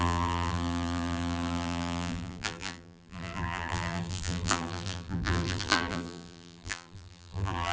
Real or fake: fake